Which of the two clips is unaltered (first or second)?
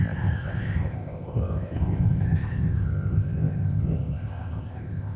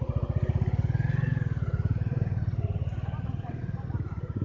second